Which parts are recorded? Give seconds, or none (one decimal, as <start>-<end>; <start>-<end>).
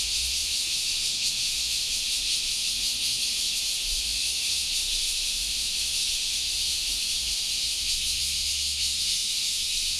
none